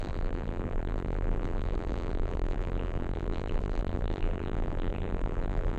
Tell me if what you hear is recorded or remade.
remade